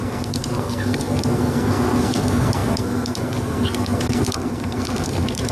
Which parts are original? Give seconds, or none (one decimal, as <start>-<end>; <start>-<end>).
none